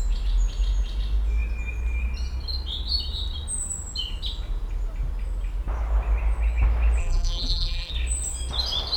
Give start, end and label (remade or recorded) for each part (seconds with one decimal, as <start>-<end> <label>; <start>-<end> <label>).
0.0-7.0 recorded; 7.0-7.9 remade; 7.9-9.0 recorded